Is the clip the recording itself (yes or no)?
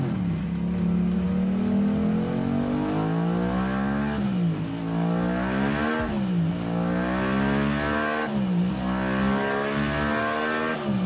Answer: yes